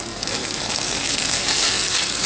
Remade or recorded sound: remade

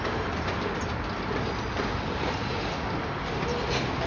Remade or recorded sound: recorded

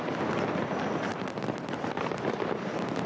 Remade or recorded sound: recorded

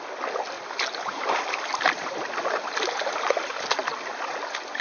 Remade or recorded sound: recorded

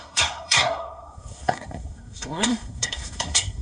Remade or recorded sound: remade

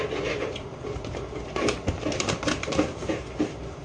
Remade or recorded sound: remade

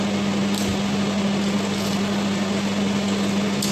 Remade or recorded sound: recorded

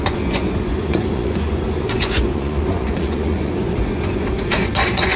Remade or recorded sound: remade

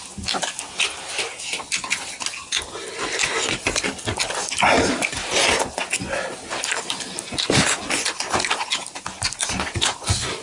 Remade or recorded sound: recorded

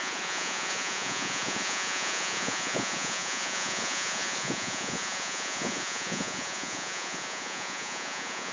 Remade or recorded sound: remade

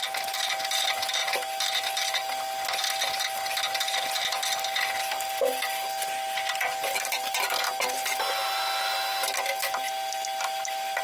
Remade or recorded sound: recorded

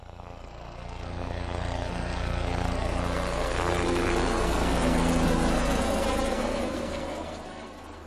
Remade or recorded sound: remade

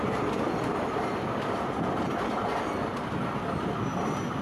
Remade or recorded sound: recorded